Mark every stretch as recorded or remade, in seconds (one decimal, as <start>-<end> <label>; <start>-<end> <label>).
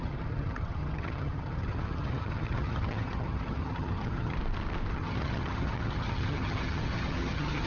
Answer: 0.0-4.4 remade; 4.4-4.9 recorded; 4.9-7.7 remade